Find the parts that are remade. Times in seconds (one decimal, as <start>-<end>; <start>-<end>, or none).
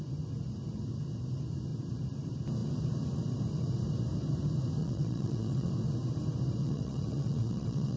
4.8-5.7; 6.6-8.0